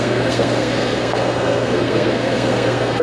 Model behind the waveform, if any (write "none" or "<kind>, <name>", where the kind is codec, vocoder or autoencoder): codec, SNAC